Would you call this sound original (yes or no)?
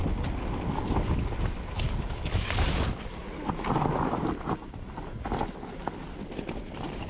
yes